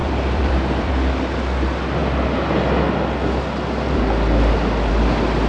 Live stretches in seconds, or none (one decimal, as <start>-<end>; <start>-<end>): 0.9-5.5